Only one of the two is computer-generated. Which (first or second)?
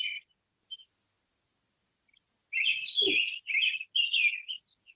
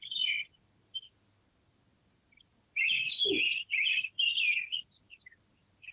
second